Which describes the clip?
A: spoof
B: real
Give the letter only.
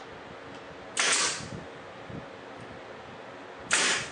B